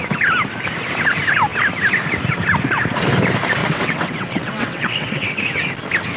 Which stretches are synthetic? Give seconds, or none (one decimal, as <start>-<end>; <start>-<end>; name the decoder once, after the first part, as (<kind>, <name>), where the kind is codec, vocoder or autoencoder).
3.6-5.4 (vocoder, WaveNeXt)

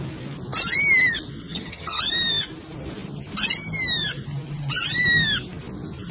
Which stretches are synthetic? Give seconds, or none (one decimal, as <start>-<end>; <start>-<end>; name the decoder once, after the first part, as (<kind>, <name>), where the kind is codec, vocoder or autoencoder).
1.5-2.0 (vocoder, HiFi-GAN)

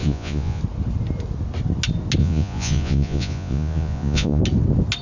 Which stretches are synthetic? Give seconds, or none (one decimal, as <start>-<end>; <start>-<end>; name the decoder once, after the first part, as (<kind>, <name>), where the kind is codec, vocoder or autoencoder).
0.0-0.6 (vocoder, Vocos); 2.2-4.4

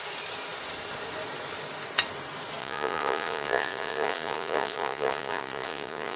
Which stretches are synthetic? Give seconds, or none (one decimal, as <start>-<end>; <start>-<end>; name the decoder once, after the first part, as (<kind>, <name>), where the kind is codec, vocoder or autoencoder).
2.6-6.2 (vocoder, Vocos)

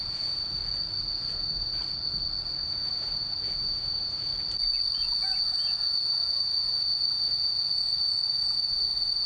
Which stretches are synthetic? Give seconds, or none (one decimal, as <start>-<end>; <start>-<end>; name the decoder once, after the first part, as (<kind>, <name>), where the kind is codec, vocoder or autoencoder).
0.0-0.6 (vocoder, Vocos); 1.3-1.8; 2.6-4.3; 4.9-9.3